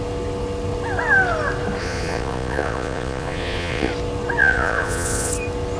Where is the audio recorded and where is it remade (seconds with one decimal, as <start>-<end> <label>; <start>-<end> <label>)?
0.0-1.8 recorded; 1.8-3.9 remade; 3.9-4.4 recorded; 4.4-5.3 remade; 5.3-5.8 recorded